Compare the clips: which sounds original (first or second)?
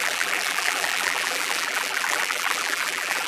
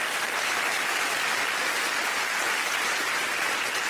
second